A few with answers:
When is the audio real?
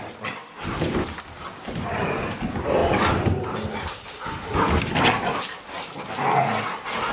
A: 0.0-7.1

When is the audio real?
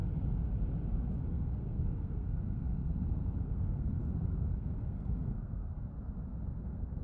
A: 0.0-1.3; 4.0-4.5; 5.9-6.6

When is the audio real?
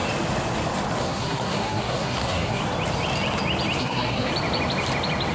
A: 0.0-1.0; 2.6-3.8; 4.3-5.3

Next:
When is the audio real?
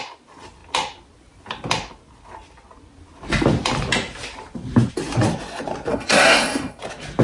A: 0.0-5.9; 6.8-7.2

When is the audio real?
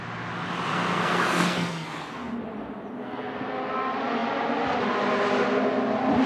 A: 0.0-0.7; 2.3-3.0; 3.5-6.3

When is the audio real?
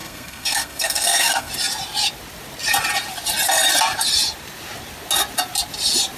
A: 1.5-6.2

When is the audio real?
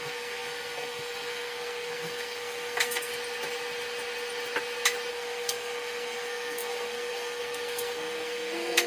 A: 3.1-5.1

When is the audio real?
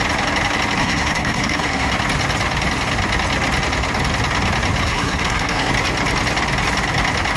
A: 0.0-0.8; 1.9-4.8; 5.7-7.4